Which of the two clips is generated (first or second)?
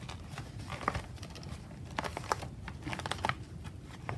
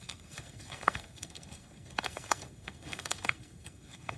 second